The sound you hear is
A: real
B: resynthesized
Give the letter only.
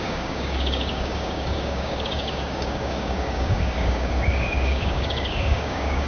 B